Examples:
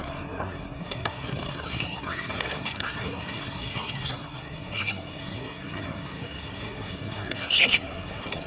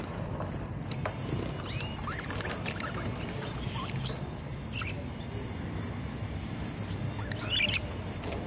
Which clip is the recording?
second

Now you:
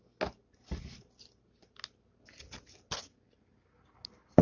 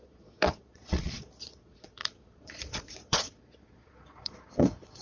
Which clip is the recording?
first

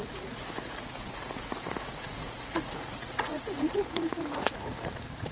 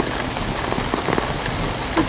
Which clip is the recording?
second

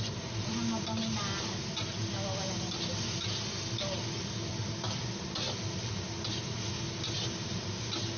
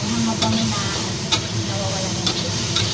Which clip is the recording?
first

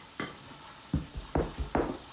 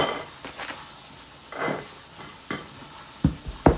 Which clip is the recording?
second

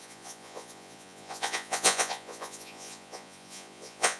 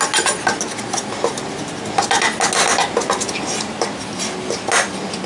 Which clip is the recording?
second